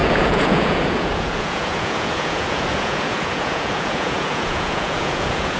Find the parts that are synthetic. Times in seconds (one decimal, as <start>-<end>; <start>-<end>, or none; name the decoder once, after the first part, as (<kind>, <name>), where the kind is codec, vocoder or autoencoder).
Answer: 0.0-5.6 (vocoder, Vocos)